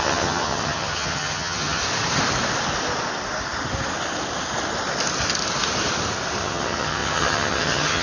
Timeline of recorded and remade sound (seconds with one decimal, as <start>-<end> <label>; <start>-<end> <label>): 0.0-1.8 remade; 1.8-6.4 recorded; 6.4-8.0 remade